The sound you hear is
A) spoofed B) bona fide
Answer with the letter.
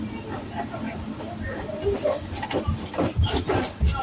B